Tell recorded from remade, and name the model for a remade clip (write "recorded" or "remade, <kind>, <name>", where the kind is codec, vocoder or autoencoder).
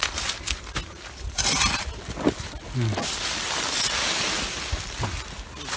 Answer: recorded